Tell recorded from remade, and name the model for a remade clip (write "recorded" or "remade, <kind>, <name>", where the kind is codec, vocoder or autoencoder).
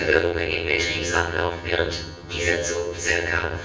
remade, vocoder, HiFi-GAN